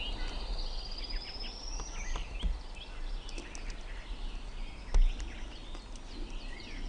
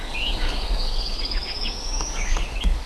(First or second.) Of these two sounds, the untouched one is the first